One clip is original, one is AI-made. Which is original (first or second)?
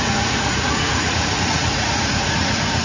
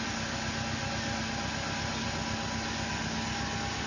second